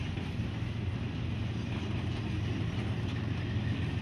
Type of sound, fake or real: real